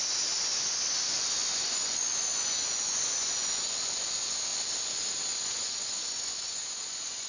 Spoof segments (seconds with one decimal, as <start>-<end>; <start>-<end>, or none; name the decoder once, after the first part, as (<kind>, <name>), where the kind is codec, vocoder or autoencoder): 0.0-4.5 (vocoder, Vocos); 5.3-7.3

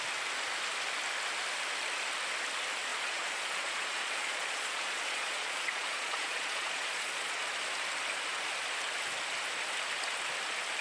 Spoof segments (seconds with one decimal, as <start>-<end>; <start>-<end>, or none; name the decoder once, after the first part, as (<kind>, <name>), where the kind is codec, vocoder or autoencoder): 2.9-7.4 (vocoder, Vocos)

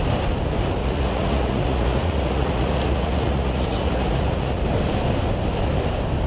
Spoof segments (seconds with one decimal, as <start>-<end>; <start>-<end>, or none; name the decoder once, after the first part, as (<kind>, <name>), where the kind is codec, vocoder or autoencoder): 0.8-4.6 (vocoder, Vocos)

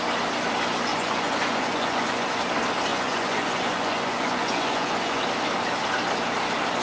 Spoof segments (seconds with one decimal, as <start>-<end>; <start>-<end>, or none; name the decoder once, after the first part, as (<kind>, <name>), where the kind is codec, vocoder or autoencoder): 0.9-2.4 (vocoder, Vocos); 2.9-5.2